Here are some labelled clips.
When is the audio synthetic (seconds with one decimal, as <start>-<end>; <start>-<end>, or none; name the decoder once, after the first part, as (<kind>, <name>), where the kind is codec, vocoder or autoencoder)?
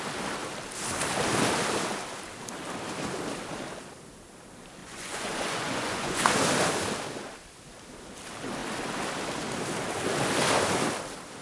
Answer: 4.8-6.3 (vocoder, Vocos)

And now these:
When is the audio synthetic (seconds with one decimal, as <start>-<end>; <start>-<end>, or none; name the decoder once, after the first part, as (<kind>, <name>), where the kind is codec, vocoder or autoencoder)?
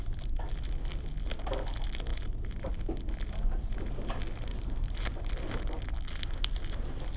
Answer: 2.1-2.7 (vocoder, BigVGAN v2); 4.5-5.3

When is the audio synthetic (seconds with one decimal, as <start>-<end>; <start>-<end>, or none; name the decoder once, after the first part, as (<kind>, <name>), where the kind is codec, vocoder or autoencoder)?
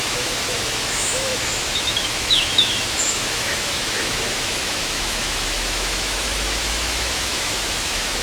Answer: 0.0-8.2 (autoencoder, DAC-VAE)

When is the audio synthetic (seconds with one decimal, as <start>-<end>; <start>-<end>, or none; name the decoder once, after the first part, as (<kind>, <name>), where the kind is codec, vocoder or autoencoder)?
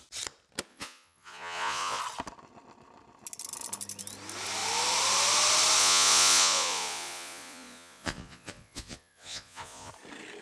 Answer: 0.7-2.0 (vocoder, Vocos); 5.8-9.9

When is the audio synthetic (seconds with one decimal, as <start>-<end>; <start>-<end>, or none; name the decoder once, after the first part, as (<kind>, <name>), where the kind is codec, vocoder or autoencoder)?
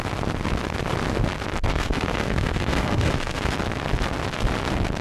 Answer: 1.7-3.5 (codec, SNAC)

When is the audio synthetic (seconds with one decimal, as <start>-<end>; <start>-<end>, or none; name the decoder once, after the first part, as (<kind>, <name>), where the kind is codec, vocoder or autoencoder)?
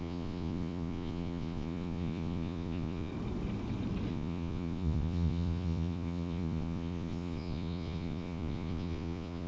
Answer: 0.0-3.1 (vocoder, Vocos); 4.1-9.5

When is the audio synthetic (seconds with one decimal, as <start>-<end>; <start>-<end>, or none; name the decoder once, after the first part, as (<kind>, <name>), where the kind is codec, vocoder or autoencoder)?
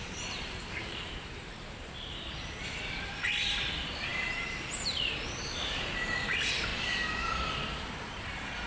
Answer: 0.0-6.7 (vocoder, BigVGAN v2); 8.2-8.7